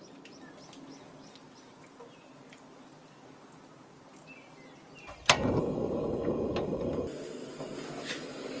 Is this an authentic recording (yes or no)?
yes